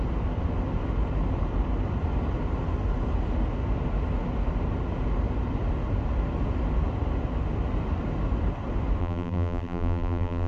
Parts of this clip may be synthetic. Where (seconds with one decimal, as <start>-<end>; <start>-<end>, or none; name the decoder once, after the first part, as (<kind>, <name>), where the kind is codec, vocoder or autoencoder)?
9.0-10.5 (vocoder, BigVGAN v2)